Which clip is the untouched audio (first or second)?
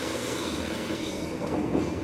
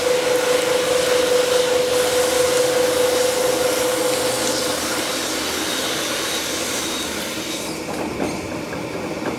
second